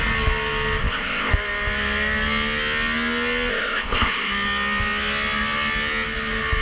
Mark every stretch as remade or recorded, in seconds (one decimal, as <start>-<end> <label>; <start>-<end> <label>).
0.0-0.8 recorded; 0.8-1.3 remade; 1.3-3.5 recorded; 3.5-4.3 remade; 4.3-6.6 recorded